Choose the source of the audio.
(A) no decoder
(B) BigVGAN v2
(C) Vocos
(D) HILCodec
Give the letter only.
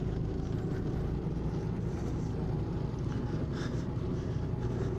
A